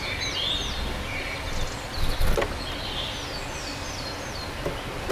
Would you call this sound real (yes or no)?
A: yes